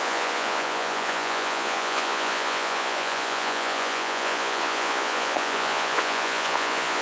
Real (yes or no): no